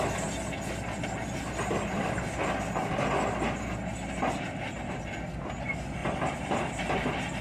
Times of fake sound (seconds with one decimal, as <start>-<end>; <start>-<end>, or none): 6.0-6.7